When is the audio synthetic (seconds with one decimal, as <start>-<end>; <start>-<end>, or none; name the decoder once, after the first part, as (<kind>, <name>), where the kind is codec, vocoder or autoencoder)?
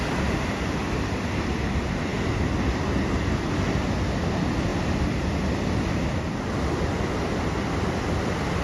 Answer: none